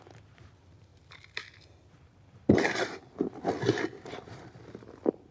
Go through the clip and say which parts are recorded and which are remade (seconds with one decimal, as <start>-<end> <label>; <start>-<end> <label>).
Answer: 0.0-5.3 recorded